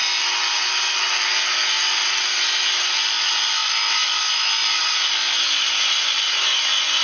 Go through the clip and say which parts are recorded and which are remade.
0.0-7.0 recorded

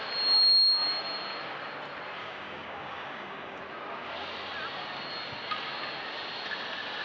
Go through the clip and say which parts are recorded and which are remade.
0.0-2.2 recorded; 2.2-3.6 remade; 3.6-7.0 recorded

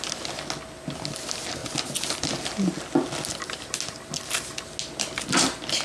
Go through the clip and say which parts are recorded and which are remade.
0.0-5.8 recorded

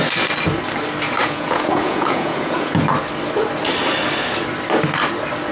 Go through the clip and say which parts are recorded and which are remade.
0.0-1.2 recorded; 1.2-2.7 remade; 2.7-5.5 recorded